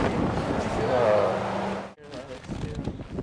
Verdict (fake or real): real